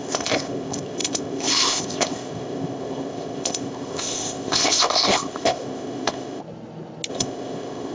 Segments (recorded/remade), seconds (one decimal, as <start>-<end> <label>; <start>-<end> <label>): 0.0-6.4 remade; 6.4-7.1 recorded; 7.1-7.9 remade